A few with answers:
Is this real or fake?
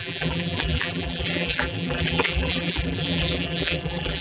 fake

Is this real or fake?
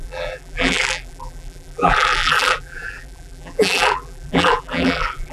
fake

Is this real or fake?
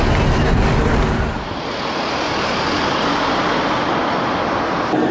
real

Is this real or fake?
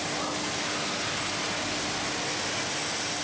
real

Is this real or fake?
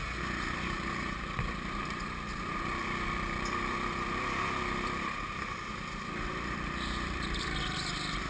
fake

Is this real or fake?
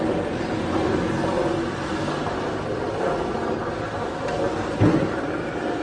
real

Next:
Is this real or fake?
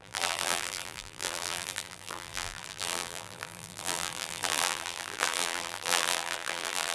fake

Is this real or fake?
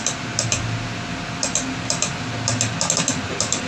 real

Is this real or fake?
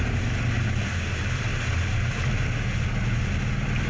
real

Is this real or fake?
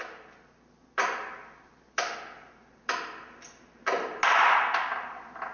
real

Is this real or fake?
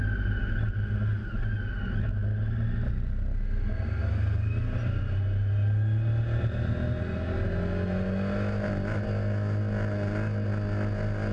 real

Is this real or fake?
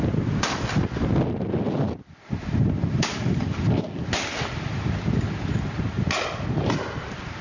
real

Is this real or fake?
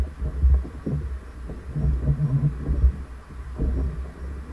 real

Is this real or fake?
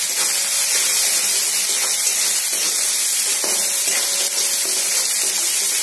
real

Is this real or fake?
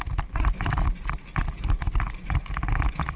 real